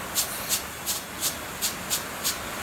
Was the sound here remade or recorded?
recorded